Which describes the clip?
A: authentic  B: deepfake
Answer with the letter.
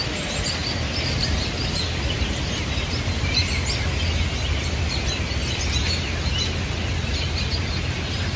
A